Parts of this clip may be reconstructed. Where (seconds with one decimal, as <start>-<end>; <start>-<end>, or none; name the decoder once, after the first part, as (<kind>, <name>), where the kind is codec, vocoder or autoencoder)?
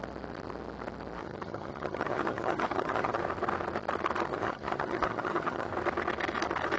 1.2-3.2 (vocoder, HiFi-GAN); 4.3-5.7